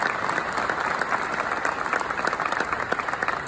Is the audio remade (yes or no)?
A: no